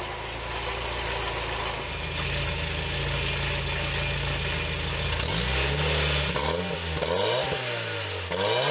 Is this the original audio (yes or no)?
yes